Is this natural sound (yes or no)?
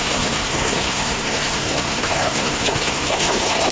no